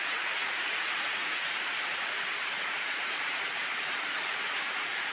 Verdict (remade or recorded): remade